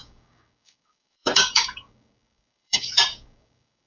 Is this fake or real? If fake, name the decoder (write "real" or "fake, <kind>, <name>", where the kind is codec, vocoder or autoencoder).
fake, codec, DAC